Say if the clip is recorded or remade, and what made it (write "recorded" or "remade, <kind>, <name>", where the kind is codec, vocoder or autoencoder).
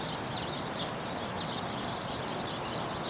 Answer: recorded